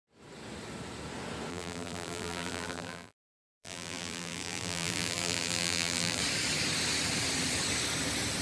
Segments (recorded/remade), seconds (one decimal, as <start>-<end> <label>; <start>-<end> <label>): 0.0-1.5 recorded; 1.5-6.2 remade; 6.2-8.4 recorded